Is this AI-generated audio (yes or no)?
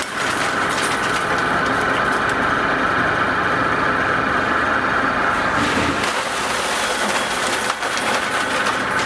no